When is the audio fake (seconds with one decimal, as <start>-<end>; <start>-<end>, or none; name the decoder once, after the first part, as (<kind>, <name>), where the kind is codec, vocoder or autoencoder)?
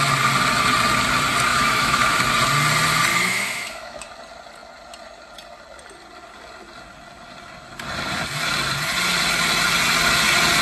1.5-2.1 (autoencoder, DAC-VAE); 3.1-4.1